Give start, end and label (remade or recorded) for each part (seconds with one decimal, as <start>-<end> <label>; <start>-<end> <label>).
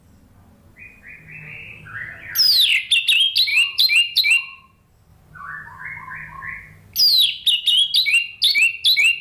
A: 0.0-3.5 recorded; 3.5-4.2 remade; 4.2-9.2 recorded